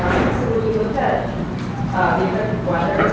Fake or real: fake